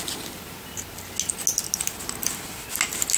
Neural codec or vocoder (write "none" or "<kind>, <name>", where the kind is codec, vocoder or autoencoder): none